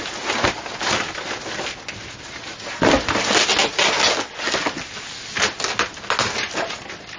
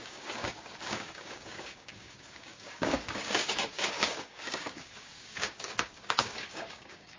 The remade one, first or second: second